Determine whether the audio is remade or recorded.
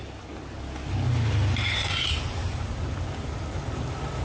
recorded